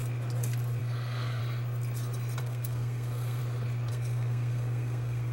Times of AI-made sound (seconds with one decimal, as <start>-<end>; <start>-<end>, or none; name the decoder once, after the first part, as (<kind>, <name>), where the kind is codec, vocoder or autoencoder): 0.8-1.4 (codec, SNAC); 2.4-3.4; 3.9-5.3

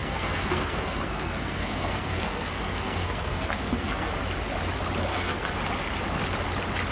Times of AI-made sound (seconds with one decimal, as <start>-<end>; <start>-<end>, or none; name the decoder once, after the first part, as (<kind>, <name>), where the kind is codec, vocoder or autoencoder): 0.0-4.1 (codec, SNAC); 5.1-5.6

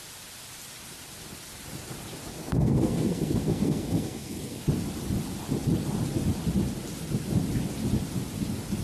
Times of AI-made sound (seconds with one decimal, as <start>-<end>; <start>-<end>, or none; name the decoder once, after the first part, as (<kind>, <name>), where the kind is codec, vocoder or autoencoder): 2.3-4.6 (codec, SNAC)

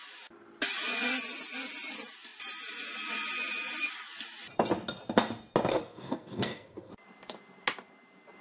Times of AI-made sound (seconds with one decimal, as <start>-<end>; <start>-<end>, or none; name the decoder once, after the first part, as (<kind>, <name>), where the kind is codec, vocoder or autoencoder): 5.7-6.9 (codec, SNAC)

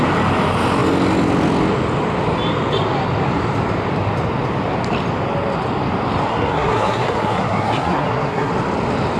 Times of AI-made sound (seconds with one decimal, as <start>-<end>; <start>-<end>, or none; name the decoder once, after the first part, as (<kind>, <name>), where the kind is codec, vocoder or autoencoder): 6.3-8.5 (codec, SNAC)

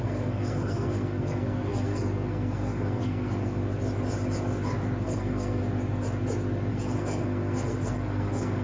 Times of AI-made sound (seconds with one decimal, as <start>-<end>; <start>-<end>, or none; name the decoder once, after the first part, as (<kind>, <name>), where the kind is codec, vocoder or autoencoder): 0.0-3.6 (codec, SNAC); 5.0-5.6; 6.7-8.6